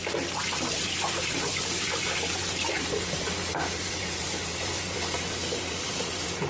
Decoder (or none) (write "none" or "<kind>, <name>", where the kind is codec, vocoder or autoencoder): vocoder, BigVGAN v2